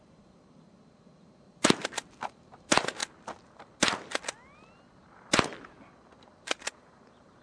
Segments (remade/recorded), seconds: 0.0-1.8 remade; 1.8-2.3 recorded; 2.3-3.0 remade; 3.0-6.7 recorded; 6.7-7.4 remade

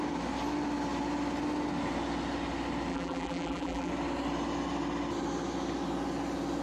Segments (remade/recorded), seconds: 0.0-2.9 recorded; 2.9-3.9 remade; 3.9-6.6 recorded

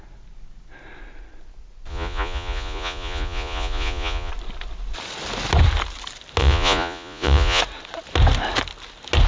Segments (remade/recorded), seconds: 0.0-1.9 recorded; 1.9-4.3 remade; 4.3-6.4 recorded; 6.4-7.6 remade; 7.6-9.3 recorded

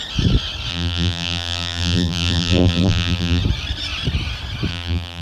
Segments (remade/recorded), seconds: 0.0-0.7 recorded; 0.7-3.4 remade; 3.4-4.7 recorded; 4.7-5.2 remade

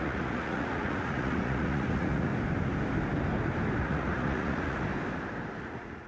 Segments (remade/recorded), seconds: 0.0-2.3 remade; 2.3-3.8 recorded; 3.8-4.9 remade; 4.9-5.6 recorded; 5.6-6.1 remade

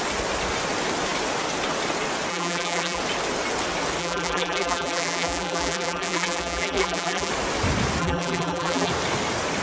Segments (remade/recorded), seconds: 0.0-2.3 recorded; 2.3-3.0 remade; 3.0-4.0 recorded; 4.0-7.3 remade; 7.3-8.0 recorded; 8.0-8.9 remade; 8.9-9.6 recorded